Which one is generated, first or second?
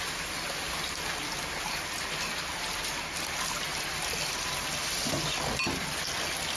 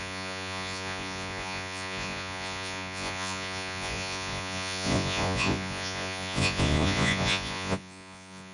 second